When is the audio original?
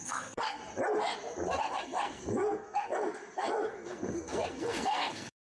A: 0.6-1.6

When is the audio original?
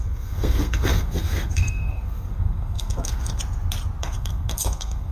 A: 3.4-4.0